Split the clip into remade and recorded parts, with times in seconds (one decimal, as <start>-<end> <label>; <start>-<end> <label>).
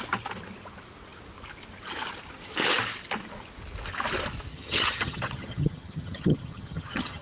0.0-4.5 recorded; 4.5-7.2 remade